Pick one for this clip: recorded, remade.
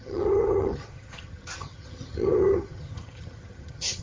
remade